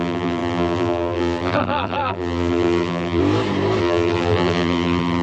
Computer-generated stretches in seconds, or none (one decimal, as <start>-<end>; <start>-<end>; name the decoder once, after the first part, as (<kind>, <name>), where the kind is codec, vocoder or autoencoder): 0.0-3.2 (vocoder, BigVGAN v2); 3.8-5.2